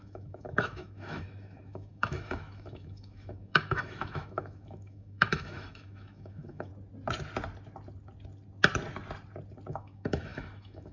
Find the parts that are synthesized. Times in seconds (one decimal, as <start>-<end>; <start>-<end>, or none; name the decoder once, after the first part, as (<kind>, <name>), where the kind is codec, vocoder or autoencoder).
0.0-6.7 (autoencoder, DAC-VAE); 9.7-10.9